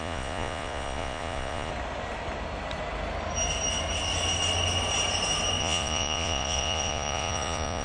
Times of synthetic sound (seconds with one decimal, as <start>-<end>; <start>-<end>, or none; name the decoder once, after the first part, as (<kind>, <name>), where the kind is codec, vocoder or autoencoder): 0.0-1.7 (vocoder, Vocos); 5.6-7.8